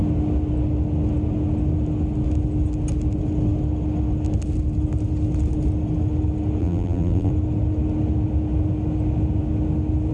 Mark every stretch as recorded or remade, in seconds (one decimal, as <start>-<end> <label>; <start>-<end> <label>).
0.0-6.6 recorded; 6.6-7.3 remade; 7.3-10.1 recorded

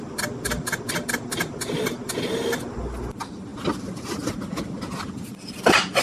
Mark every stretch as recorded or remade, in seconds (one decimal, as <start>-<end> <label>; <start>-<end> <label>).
0.0-6.0 recorded